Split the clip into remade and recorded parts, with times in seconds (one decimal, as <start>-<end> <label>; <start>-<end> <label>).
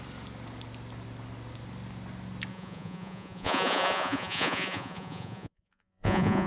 0.0-2.5 recorded; 2.5-6.5 remade